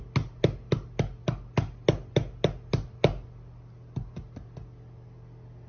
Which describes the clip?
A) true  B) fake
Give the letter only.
A